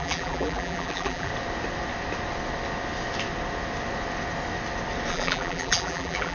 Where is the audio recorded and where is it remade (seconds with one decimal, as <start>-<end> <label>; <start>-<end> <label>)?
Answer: 0.0-1.3 remade; 1.3-5.1 recorded; 5.1-6.3 remade

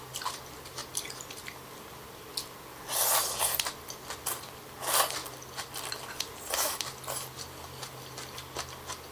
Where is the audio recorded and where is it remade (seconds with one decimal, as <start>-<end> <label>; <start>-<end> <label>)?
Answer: 0.0-9.1 recorded

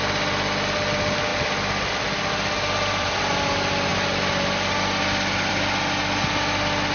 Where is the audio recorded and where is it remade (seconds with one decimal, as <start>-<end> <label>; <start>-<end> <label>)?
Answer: 0.0-6.9 recorded

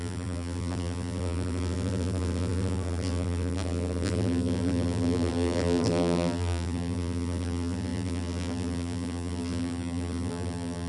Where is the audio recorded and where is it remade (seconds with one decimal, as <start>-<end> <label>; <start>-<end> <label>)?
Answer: 0.0-10.9 remade